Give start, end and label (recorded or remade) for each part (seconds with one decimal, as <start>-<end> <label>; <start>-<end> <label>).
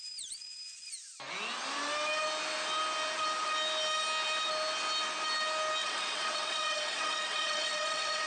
0.0-5.8 recorded; 5.8-8.3 remade